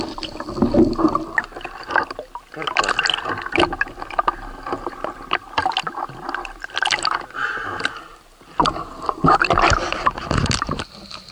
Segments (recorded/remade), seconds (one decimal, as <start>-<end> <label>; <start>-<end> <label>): 0.0-11.3 recorded